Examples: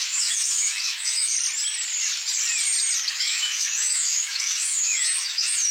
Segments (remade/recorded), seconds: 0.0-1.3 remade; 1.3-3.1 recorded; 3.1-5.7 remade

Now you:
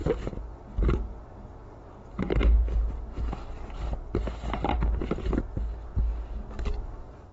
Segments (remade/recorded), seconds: 0.0-7.3 recorded

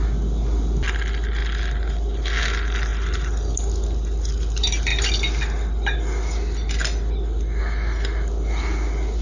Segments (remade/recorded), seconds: 0.0-9.2 recorded